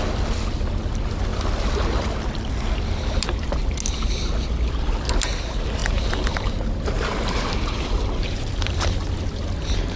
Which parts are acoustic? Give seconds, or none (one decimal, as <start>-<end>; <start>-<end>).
0.0-5.8; 8.5-10.0